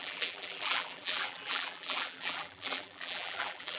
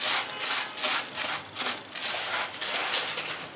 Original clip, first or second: second